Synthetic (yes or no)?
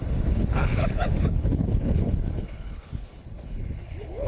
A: yes